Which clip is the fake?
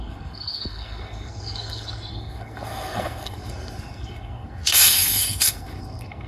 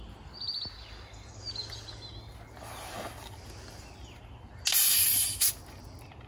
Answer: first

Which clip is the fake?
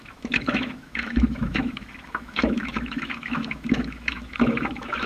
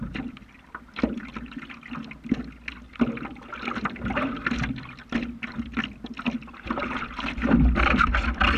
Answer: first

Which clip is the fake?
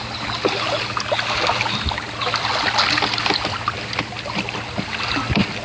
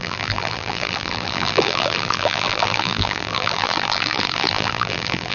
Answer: second